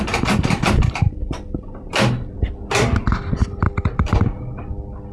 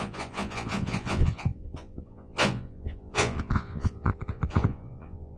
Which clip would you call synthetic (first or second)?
second